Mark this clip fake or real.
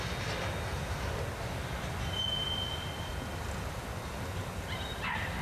real